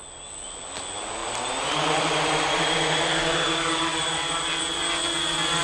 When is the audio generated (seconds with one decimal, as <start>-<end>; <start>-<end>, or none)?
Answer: 1.2-2.8; 3.9-5.0